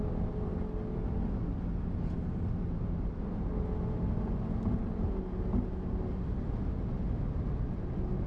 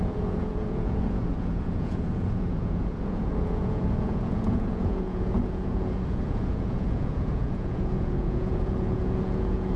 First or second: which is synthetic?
second